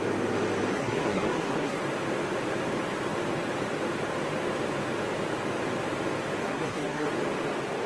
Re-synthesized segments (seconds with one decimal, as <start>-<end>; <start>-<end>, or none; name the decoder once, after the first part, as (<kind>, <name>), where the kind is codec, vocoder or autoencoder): 0.7-1.8 (codec, SNAC); 6.4-7.1